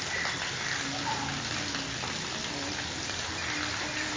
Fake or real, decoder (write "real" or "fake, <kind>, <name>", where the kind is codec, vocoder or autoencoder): real